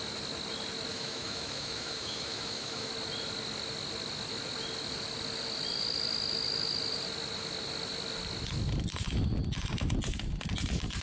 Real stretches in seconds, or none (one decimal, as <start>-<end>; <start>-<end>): 0.0-0.9; 2.9-11.0